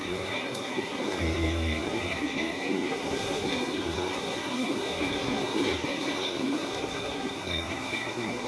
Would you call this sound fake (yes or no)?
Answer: yes